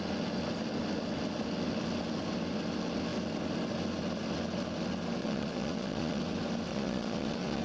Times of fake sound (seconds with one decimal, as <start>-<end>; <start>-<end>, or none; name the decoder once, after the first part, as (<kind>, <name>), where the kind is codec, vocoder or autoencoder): 5.2-6.2 (vocoder, Vocos); 6.7-7.6

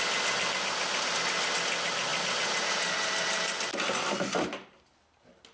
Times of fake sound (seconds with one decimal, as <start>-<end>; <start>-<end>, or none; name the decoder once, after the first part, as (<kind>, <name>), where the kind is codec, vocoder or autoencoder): none

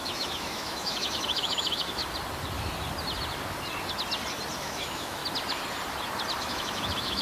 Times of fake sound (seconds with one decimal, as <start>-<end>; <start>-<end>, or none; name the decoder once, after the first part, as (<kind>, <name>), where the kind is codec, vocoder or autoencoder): 0.0-2.0 (autoencoder, DAC-VAE); 4.6-5.2; 6.4-7.2